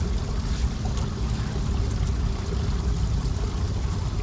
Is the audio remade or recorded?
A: recorded